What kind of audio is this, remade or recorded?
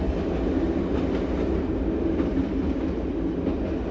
recorded